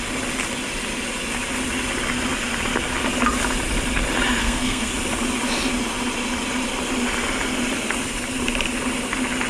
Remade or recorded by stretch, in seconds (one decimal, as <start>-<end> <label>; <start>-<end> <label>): 0.0-4.4 recorded; 4.4-4.9 remade; 4.9-9.5 recorded